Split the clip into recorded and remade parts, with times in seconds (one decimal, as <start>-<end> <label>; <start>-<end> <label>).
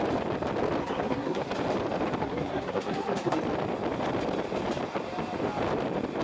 0.0-0.8 recorded; 0.8-1.5 remade; 1.5-2.2 recorded; 2.2-3.4 remade; 3.4-6.2 recorded